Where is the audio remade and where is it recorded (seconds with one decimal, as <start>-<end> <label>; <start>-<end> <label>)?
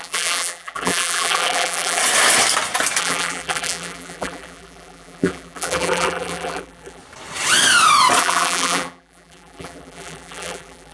0.0-2.0 remade; 2.0-3.0 recorded; 3.0-7.0 remade; 7.0-8.2 recorded; 8.2-10.9 remade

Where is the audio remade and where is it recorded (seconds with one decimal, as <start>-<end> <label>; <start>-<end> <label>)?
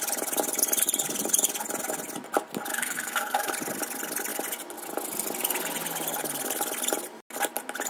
0.0-2.7 recorded; 2.7-3.5 remade; 3.5-7.9 recorded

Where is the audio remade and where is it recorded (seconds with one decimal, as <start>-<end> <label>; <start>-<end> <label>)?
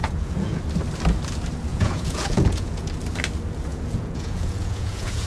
0.0-0.6 remade; 0.6-1.7 recorded; 1.7-2.9 remade; 2.9-3.7 recorded; 3.7-5.3 remade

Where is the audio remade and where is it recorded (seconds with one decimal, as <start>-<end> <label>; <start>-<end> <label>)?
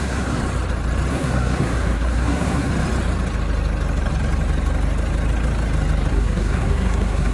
0.0-0.4 remade; 0.4-1.1 recorded; 1.1-2.7 remade; 2.7-6.1 recorded; 6.1-7.3 remade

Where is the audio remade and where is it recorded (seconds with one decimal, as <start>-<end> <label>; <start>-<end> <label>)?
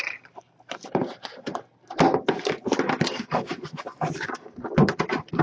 0.0-1.5 remade; 1.5-2.3 recorded; 2.3-4.6 remade; 4.6-5.4 recorded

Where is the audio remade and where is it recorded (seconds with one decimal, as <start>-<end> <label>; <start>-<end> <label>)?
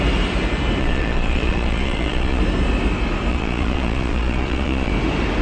0.0-0.8 recorded; 0.8-2.4 remade; 2.4-3.3 recorded; 3.3-4.9 remade; 4.9-5.4 recorded